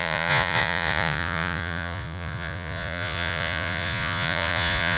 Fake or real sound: fake